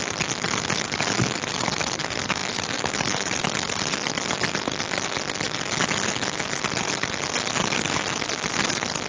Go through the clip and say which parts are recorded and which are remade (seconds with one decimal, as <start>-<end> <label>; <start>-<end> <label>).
0.0-9.1 recorded